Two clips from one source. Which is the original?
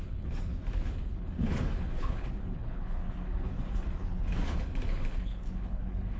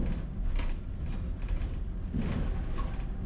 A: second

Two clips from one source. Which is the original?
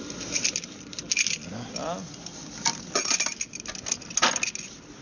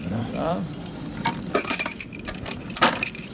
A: first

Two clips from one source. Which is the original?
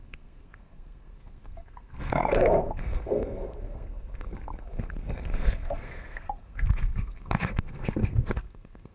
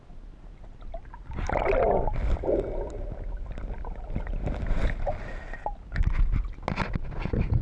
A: second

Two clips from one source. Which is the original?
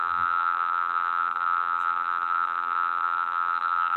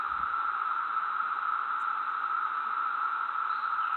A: second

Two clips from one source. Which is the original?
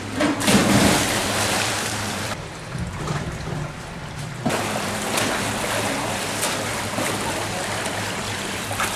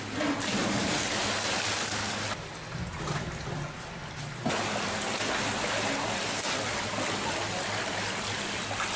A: second